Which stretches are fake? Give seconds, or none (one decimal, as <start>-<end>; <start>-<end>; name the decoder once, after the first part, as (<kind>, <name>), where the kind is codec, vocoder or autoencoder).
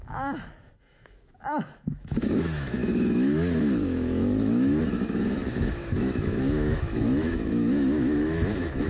0.0-8.9 (autoencoder, DAC-VAE)